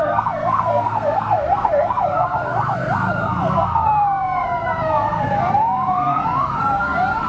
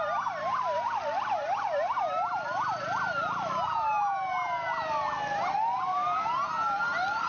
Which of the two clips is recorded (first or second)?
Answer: second